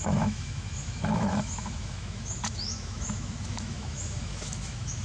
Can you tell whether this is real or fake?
fake